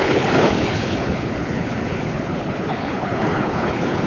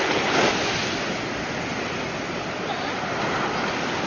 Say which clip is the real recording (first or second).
second